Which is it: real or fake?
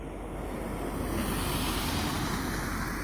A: real